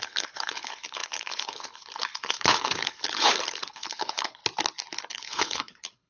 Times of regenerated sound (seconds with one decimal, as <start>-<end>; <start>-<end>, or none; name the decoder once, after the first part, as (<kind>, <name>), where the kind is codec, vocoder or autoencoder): 0.0-4.4 (codec, HILCodec); 5.1-6.1